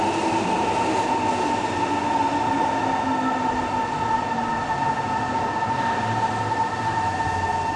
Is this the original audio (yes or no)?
yes